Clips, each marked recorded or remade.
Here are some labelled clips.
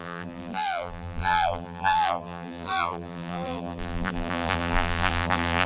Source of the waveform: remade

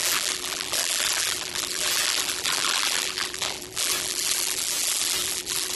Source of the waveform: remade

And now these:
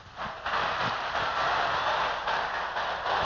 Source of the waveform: recorded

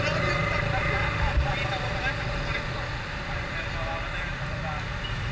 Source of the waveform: recorded